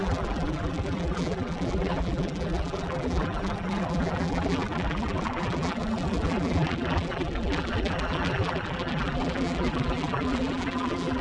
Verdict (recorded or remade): remade